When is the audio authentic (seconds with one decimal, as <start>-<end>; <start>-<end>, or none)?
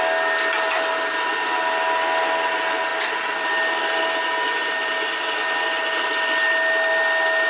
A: 0.0-7.5